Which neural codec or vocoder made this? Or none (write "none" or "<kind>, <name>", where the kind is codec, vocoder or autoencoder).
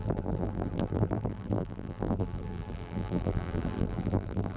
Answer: vocoder, BigVGAN v2